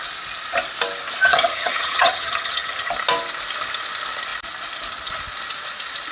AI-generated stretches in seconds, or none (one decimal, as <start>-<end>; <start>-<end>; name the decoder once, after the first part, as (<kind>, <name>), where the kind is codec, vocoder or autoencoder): 1.3-2.9 (vocoder, HiFi-GAN)